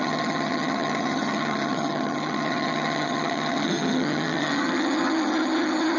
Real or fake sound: fake